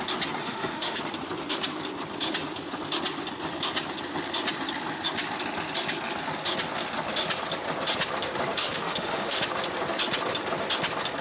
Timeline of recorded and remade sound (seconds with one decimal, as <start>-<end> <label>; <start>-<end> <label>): 0.0-0.4 recorded; 0.4-1.0 remade; 1.0-8.6 recorded; 8.6-9.4 remade; 9.4-11.2 recorded